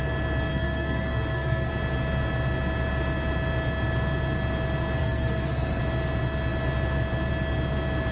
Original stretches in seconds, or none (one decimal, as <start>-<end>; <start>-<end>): 0.0-0.5; 1.7-5.0; 5.8-8.1